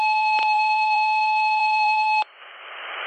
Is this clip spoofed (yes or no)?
yes